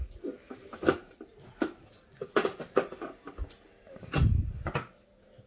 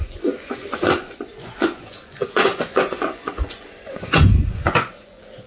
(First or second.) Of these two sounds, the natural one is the first